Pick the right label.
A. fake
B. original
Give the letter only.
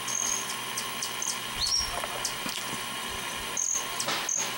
B